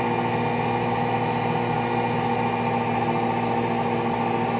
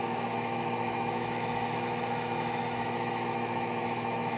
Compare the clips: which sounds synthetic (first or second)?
second